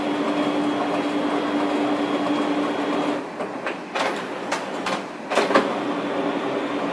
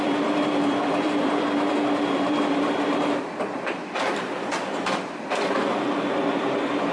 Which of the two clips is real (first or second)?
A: first